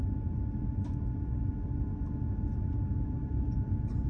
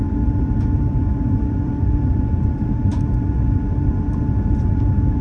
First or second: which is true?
first